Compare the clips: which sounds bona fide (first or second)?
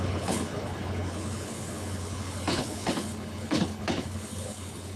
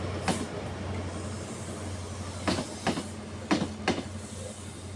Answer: second